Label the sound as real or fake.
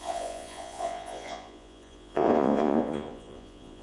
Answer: fake